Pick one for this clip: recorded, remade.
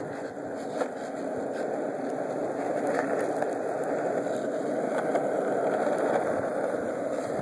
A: recorded